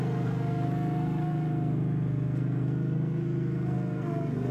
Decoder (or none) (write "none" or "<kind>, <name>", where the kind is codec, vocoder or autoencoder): codec, SNAC